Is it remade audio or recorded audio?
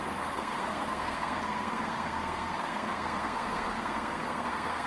remade